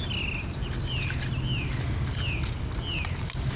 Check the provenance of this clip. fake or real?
real